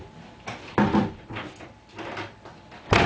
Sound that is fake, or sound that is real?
fake